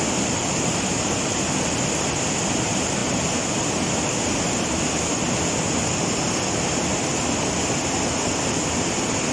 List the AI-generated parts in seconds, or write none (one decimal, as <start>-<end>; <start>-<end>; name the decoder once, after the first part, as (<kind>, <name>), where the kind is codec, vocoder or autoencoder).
none